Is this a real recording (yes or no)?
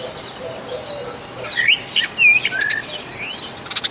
yes